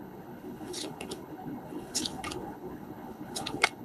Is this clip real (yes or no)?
no